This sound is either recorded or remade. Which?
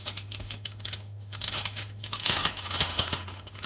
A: remade